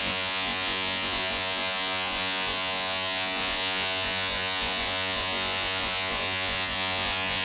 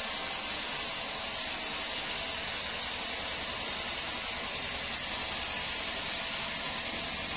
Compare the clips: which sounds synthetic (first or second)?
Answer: first